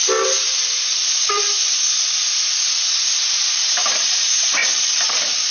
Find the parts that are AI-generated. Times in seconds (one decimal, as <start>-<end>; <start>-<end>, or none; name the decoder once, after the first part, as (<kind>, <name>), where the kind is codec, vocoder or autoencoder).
2.9-4.6 (vocoder, BigVGAN v2); 5.1-5.5